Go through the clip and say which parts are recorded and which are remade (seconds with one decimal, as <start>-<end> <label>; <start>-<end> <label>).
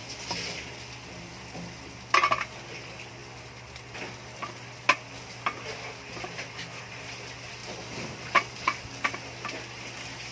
0.0-10.3 recorded